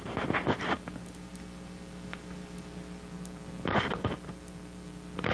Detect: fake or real real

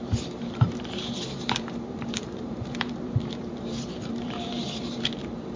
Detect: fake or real fake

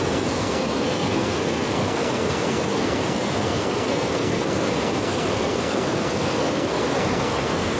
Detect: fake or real fake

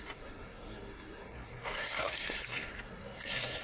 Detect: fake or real fake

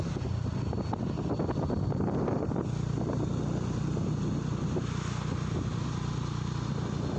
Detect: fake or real real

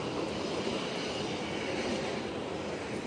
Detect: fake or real real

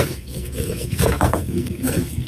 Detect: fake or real fake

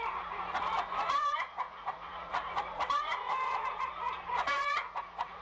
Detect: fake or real fake